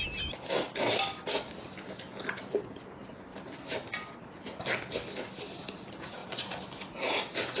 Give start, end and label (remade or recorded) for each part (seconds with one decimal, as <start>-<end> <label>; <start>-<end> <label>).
0.0-7.6 recorded